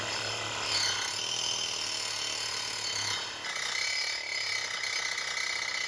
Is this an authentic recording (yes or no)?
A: yes